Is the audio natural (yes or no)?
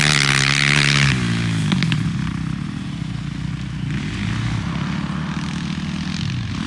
yes